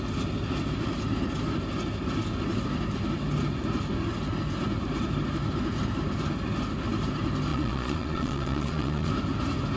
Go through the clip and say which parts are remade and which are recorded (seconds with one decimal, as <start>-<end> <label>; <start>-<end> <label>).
0.0-7.5 recorded; 7.5-9.1 remade; 9.1-9.8 recorded